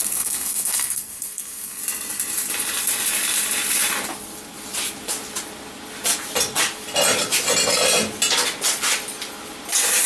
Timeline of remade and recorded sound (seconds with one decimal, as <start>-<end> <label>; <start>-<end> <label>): 0.0-1.8 remade; 1.8-10.1 recorded